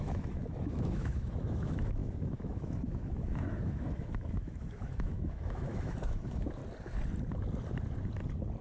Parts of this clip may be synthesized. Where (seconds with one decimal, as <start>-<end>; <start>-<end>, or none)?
0.0-6.6